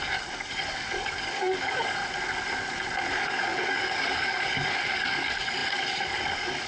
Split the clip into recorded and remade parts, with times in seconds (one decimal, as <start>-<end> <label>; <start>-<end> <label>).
0.0-2.0 remade; 2.0-3.1 recorded; 3.1-6.7 remade

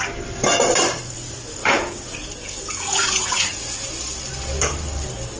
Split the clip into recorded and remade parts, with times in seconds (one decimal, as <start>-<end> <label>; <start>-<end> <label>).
0.0-1.6 recorded; 1.6-3.9 remade; 3.9-5.4 recorded

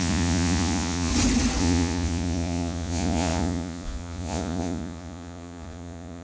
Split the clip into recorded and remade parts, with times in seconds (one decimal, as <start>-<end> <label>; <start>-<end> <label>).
0.0-1.1 remade; 1.1-1.6 recorded; 1.6-6.2 remade